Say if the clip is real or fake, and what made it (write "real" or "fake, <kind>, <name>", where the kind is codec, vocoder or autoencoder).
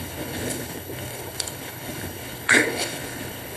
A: fake, codec, HILCodec